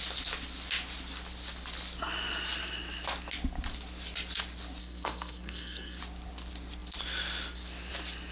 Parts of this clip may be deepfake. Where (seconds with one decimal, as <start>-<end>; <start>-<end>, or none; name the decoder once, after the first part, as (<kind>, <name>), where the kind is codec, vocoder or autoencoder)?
4.8-6.0 (codec, SNAC)

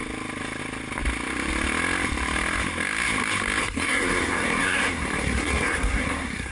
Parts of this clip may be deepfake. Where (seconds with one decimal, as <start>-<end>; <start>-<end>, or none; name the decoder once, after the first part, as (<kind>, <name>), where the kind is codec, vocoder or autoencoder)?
3.6-6.5 (codec, SNAC)